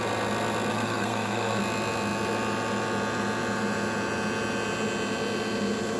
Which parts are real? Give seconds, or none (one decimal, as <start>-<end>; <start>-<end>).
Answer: 0.0-0.7; 1.6-6.0